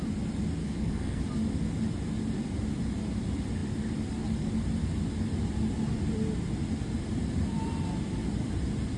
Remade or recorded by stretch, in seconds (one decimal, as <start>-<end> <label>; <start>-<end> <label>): 0.0-0.6 recorded; 0.6-1.2 remade; 1.2-9.0 recorded